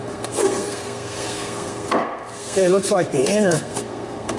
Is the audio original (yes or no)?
no